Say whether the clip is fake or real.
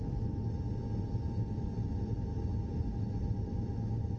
real